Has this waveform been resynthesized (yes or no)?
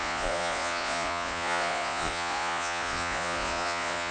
yes